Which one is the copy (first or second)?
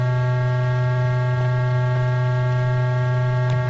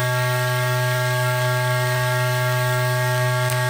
second